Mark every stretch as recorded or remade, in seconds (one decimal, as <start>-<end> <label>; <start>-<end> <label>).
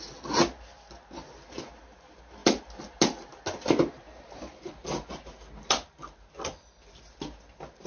0.0-7.9 recorded